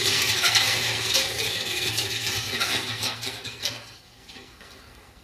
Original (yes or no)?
no